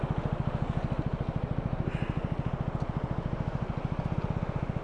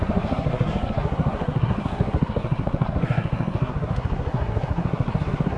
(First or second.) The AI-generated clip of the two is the second